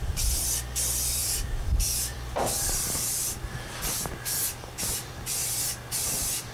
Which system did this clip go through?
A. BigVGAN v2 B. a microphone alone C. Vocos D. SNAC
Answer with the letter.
A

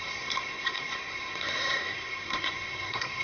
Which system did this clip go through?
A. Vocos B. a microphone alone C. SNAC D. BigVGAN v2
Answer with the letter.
C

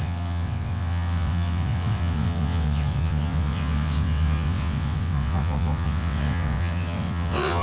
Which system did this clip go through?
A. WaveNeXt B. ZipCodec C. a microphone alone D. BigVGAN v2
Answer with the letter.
A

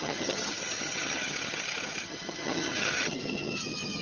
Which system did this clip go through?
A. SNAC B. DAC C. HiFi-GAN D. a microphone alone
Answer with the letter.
C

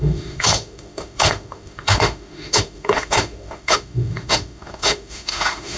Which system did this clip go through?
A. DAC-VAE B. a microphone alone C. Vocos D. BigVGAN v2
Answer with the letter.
A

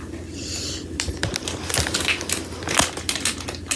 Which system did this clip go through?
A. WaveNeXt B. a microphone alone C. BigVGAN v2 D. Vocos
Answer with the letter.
B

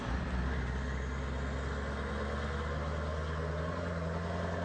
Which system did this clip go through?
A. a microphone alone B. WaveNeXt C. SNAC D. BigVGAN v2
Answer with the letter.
A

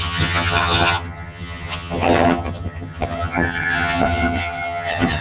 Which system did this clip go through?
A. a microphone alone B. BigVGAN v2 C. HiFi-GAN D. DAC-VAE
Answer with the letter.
C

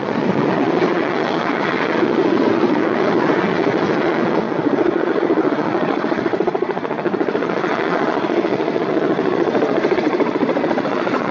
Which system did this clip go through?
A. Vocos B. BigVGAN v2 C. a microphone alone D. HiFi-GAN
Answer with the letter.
A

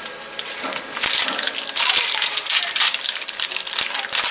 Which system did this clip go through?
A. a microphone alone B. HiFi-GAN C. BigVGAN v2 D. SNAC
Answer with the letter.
C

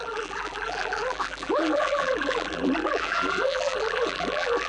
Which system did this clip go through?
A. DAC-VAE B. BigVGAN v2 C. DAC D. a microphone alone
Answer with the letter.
B